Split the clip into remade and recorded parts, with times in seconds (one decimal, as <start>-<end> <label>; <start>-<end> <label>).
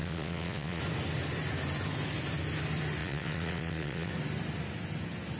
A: 0.0-0.8 remade; 0.8-3.0 recorded; 3.0-4.1 remade; 4.1-5.4 recorded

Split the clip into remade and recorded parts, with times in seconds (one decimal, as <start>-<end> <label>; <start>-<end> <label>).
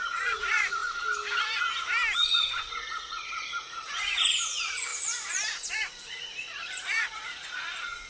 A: 0.0-0.8 remade; 0.8-2.7 recorded; 2.7-8.1 remade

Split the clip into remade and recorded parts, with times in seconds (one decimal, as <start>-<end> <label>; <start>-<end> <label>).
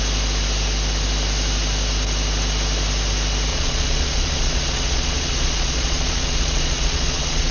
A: 0.0-3.5 recorded; 3.5-7.5 remade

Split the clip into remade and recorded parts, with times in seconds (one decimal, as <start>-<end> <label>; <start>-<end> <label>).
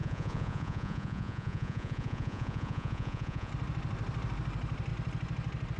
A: 0.0-3.5 remade; 3.5-5.8 recorded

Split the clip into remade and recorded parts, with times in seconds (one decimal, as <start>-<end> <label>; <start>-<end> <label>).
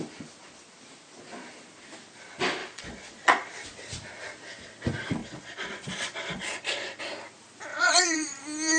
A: 0.0-2.6 recorded; 2.6-3.5 remade; 3.5-5.2 recorded; 5.2-7.0 remade; 7.0-7.7 recorded; 7.7-8.4 remade; 8.4-8.8 recorded